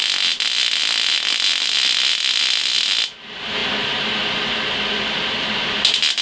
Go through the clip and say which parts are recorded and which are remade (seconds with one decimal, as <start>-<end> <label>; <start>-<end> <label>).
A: 0.0-6.2 recorded